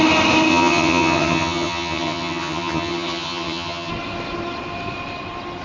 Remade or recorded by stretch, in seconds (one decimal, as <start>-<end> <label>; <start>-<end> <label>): 0.0-0.5 recorded; 0.5-3.9 remade; 3.9-5.6 recorded